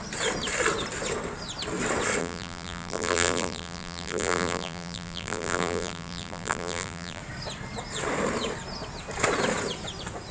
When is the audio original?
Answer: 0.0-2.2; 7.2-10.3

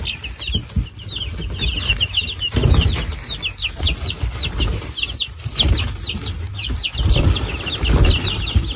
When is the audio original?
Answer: 0.0-6.6

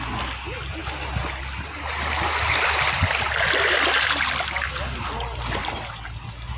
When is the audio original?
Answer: 0.0-0.8; 4.8-6.6

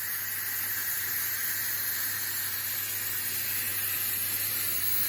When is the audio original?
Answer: 0.0-5.1